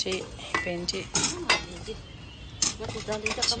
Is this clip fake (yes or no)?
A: no